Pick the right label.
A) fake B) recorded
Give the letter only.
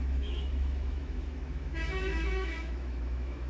A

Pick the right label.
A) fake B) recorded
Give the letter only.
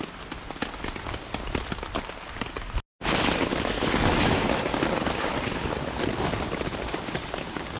B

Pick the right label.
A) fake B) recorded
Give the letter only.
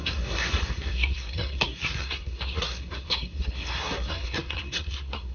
A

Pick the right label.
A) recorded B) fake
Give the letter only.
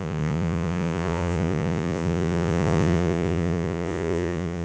B